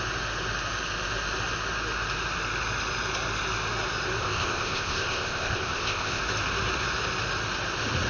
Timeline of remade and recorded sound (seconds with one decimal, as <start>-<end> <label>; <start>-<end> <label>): 0.0-4.2 recorded; 4.2-6.2 remade; 6.2-8.1 recorded

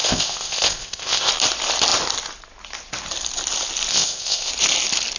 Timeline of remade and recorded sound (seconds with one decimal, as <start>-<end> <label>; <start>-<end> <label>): 0.0-1.3 remade; 1.3-3.9 recorded; 3.9-4.5 remade; 4.5-5.2 recorded

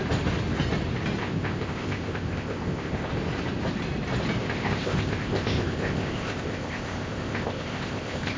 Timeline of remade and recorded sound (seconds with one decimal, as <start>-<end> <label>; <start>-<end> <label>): 0.0-1.2 recorded; 1.2-3.1 remade; 3.1-4.4 recorded; 4.4-8.4 remade

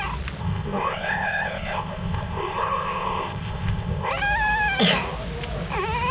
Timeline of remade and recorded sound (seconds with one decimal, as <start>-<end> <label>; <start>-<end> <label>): 0.0-0.4 recorded; 0.4-4.1 remade; 4.1-6.1 recorded

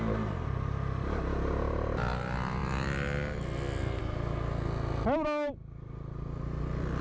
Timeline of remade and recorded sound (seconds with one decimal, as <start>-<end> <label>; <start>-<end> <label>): 0.0-7.0 recorded

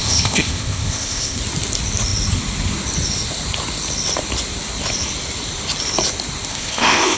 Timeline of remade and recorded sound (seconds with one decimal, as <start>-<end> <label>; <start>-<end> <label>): 0.0-1.4 remade; 1.4-6.5 recorded; 6.5-7.2 remade